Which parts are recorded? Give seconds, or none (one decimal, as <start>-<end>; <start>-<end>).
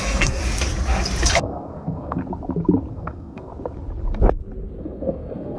0.4-1.3; 2.2-2.9; 3.5-4.8